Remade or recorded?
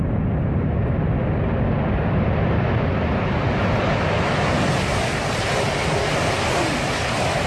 recorded